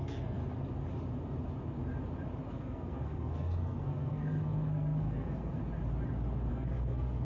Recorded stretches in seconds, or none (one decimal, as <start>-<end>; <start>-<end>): 0.4-2.5; 5.6-6.5